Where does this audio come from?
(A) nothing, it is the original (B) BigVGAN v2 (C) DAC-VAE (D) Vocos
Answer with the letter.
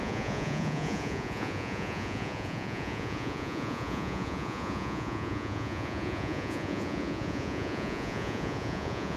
D